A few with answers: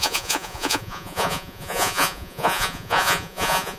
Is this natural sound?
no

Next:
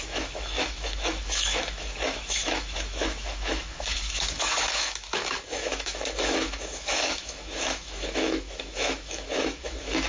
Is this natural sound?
no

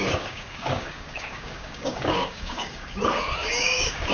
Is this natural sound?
no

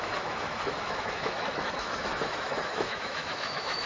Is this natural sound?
no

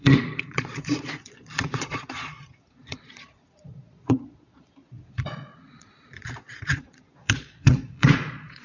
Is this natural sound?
no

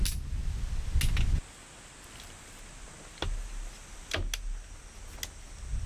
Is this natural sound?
yes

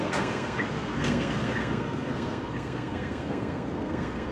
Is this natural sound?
no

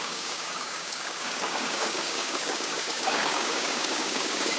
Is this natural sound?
no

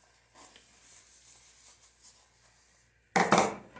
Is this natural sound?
yes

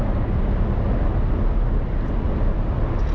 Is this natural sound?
yes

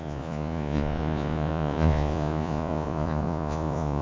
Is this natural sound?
no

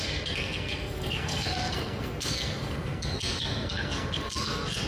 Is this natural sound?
no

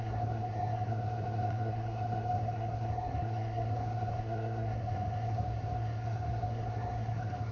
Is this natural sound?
no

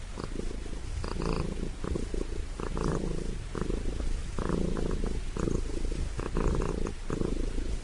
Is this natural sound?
yes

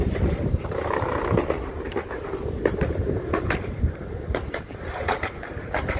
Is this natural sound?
no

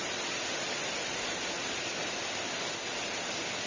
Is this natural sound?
yes